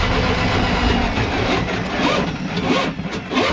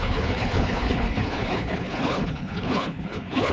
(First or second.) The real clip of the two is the first